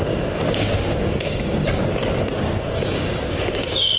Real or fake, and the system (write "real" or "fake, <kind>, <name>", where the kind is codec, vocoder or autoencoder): fake, codec, DAC